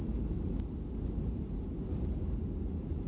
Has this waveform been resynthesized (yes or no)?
no